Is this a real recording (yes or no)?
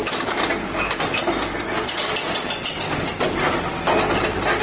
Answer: yes